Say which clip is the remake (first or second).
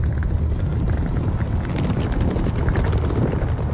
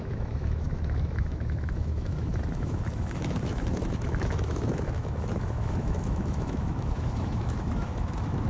second